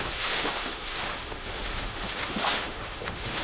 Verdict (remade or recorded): remade